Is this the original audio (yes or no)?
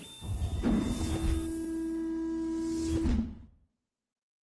yes